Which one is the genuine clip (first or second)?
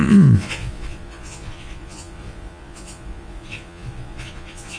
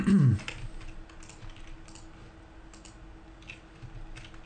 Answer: second